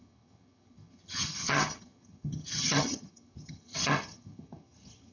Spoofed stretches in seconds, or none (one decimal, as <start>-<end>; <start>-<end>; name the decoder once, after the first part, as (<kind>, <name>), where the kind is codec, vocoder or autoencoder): 0.0-5.1 (vocoder, HiFi-GAN)